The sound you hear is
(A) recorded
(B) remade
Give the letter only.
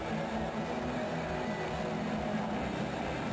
A